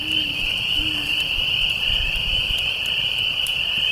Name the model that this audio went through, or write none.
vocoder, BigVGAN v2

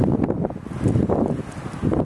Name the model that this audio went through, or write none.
none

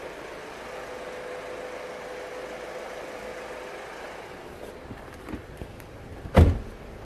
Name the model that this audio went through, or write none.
vocoder, BigVGAN v2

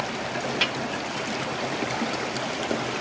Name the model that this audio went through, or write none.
none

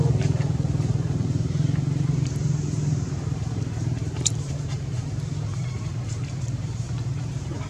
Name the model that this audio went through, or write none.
vocoder, BigVGAN v2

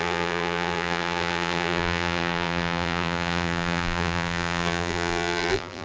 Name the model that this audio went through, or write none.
vocoder, BigVGAN v2